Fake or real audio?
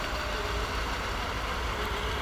fake